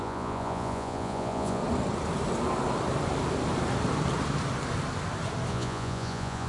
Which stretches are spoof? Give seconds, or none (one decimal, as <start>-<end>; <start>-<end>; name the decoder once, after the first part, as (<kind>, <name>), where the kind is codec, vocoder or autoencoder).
0.0-1.6 (vocoder, Vocos); 5.5-6.5